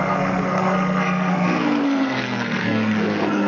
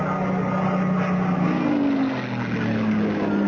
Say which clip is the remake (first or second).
first